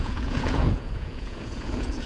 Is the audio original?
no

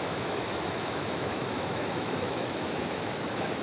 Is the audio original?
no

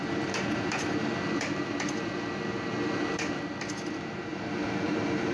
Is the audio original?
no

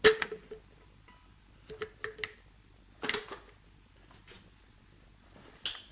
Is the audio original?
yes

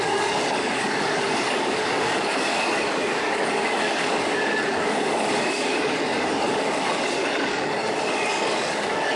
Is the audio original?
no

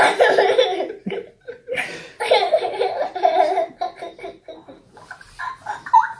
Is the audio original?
yes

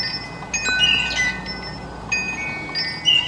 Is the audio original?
yes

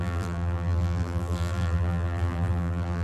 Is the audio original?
no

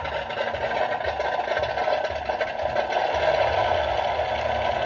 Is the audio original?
yes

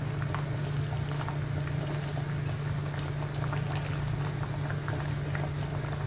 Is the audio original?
yes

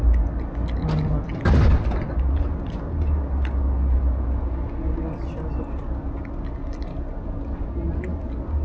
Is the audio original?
yes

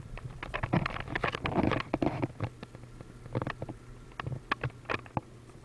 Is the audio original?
yes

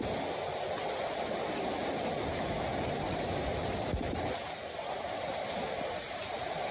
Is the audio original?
yes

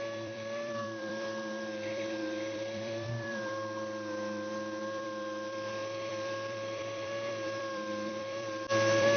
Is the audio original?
no